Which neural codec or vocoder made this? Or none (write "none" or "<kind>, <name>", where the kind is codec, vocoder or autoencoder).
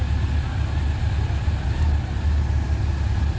none